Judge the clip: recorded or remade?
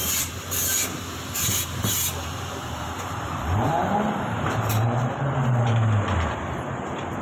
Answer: remade